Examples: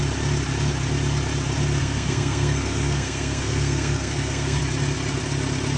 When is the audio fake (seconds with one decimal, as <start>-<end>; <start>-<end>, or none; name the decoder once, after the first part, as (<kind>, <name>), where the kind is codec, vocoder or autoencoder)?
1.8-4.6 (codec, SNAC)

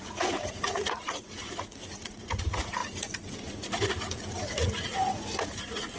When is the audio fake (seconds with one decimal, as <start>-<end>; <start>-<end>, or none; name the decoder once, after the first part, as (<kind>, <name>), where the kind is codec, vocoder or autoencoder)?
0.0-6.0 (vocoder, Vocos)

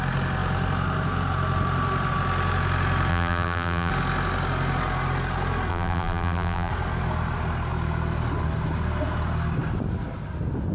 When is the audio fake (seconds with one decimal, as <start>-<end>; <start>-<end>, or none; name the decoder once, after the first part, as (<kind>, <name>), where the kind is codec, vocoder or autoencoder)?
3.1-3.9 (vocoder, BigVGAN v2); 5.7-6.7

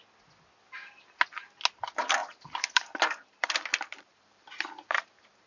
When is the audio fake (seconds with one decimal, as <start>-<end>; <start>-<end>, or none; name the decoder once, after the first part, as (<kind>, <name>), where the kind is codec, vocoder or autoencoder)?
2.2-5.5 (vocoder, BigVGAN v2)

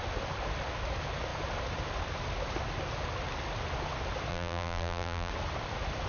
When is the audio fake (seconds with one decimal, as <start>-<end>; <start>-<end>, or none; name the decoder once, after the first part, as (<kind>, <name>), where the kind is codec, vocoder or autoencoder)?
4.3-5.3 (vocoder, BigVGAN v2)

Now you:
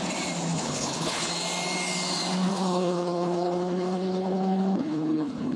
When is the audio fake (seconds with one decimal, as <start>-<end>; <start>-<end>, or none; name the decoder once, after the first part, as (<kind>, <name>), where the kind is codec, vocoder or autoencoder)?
0.5-1.3 (codec, HILCodec); 2.5-5.6

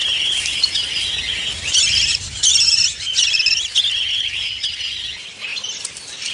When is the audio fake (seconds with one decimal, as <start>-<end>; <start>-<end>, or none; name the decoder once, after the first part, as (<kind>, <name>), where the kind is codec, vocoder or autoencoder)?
2.5-3.8 (vocoder, BigVGAN v2); 5.5-6.3